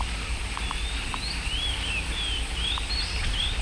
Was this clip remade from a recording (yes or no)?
no